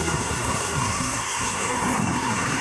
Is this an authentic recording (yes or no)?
no